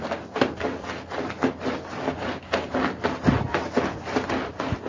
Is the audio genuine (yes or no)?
yes